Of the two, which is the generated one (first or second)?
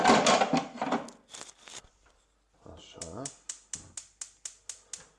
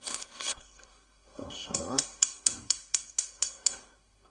second